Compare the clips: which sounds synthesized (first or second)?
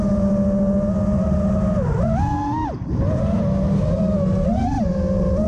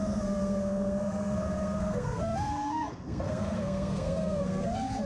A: second